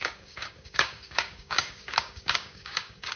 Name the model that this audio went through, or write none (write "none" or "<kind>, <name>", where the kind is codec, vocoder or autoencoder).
codec, DAC